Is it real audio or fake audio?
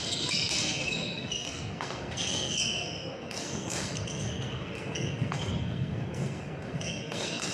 fake